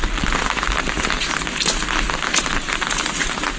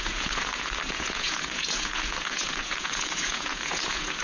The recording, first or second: first